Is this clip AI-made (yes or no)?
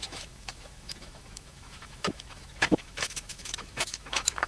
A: yes